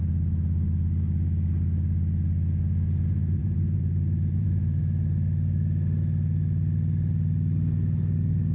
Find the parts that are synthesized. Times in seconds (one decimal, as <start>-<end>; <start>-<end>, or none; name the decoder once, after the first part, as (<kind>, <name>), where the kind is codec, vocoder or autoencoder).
3.4-4.8 (vocoder, Vocos)